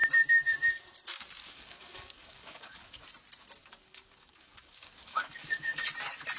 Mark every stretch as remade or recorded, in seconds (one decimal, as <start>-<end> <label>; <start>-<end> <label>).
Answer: 0.0-1.4 recorded; 1.4-3.0 remade; 3.0-3.6 recorded; 3.6-5.8 remade; 5.8-6.4 recorded